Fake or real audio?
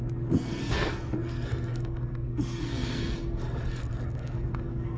fake